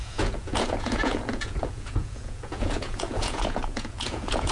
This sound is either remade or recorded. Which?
remade